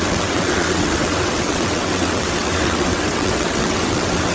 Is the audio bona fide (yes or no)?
no